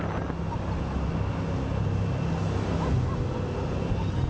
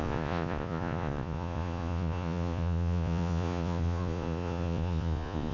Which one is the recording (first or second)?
first